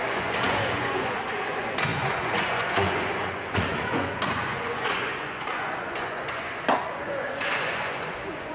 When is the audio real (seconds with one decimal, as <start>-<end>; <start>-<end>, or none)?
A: none

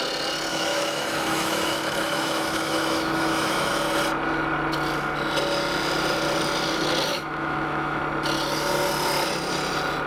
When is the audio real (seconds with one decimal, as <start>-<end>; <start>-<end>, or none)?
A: 0.0-0.5; 3.7-7.1; 8.0-10.1

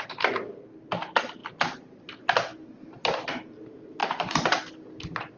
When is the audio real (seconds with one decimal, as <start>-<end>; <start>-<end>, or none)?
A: 0.0-4.0; 4.6-5.4

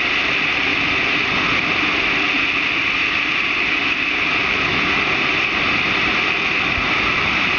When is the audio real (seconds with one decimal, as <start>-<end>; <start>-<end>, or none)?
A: 0.7-4.3; 4.7-7.1

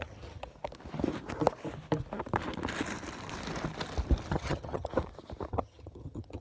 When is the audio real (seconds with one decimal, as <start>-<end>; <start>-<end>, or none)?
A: 0.5-4.3; 4.9-5.5

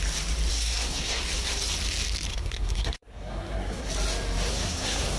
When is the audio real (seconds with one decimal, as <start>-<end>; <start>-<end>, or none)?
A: 0.0-0.5; 1.2-2.3; 3.9-4.5